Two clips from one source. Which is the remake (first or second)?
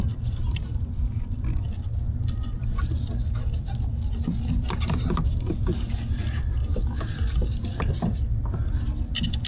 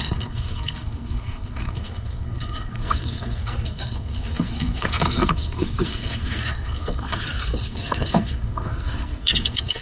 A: second